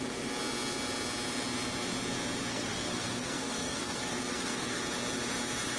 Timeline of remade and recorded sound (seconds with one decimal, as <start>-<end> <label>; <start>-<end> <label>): 0.0-2.5 recorded; 2.5-4.8 remade; 4.8-5.8 recorded